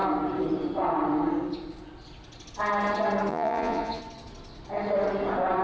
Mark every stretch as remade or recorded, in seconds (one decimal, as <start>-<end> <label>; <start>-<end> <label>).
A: 0.0-3.3 recorded; 3.3-4.0 remade; 4.0-5.6 recorded

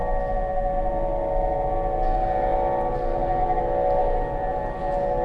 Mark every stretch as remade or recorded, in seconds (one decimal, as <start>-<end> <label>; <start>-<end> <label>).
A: 0.0-5.2 recorded

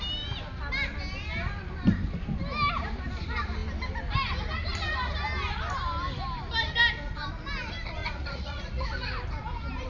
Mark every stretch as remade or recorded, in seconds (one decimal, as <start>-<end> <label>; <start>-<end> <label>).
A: 0.0-8.0 recorded; 8.0-9.2 remade; 9.2-9.9 recorded

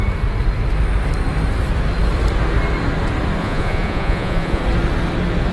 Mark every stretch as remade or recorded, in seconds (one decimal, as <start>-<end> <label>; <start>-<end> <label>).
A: 0.0-3.4 recorded; 3.4-4.6 remade; 4.6-5.5 recorded

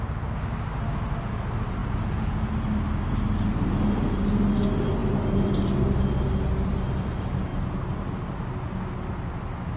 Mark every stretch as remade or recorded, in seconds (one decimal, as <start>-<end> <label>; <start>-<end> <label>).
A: 0.0-1.8 recorded; 1.8-2.5 remade; 2.5-9.8 recorded

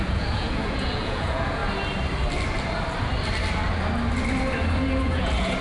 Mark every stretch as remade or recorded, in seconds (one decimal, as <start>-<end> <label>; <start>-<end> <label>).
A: 0.0-1.6 remade; 1.6-5.0 recorded; 5.0-5.6 remade